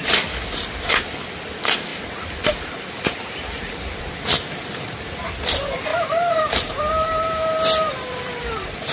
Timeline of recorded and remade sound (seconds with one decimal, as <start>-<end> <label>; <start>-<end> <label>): 0.0-1.9 recorded; 1.9-4.0 remade; 4.0-5.9 recorded; 5.9-8.9 remade